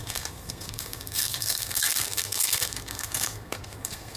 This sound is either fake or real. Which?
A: fake